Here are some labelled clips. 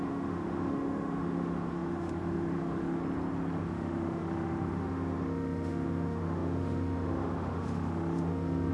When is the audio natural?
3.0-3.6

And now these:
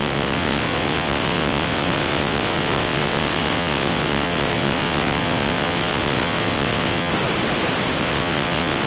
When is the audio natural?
7.1-8.0

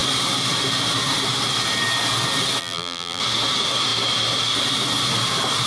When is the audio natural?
0.0-2.6; 3.2-5.7

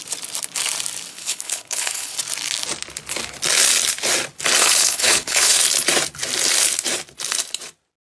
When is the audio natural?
0.0-1.1; 2.2-4.6; 5.6-8.1

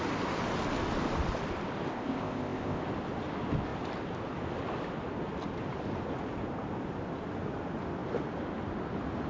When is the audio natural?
0.0-1.9; 2.8-9.3

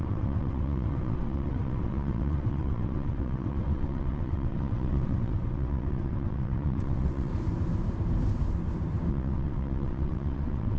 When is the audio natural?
7.3-9.1

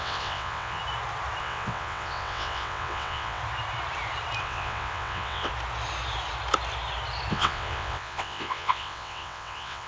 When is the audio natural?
0.8-1.4; 3.4-4.4; 5.5-7.3

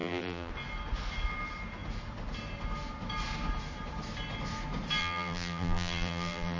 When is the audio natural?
0.5-5.0